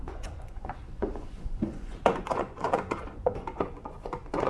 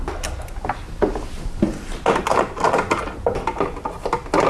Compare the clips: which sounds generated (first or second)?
first